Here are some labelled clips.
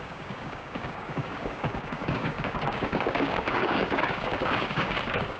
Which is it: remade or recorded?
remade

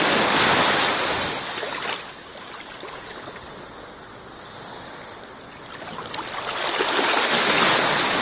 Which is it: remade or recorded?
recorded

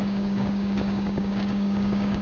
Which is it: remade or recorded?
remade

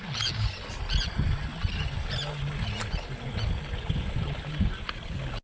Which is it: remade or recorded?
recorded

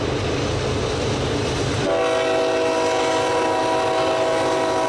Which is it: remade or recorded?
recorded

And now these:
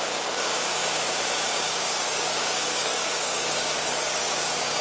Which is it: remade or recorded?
remade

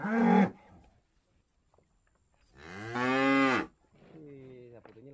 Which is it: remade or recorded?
recorded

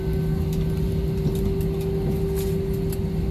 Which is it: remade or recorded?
recorded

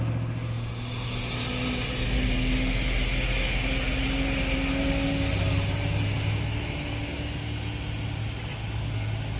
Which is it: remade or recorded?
recorded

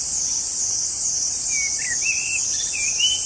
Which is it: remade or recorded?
recorded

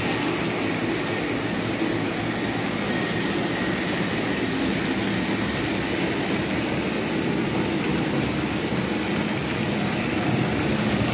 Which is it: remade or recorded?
recorded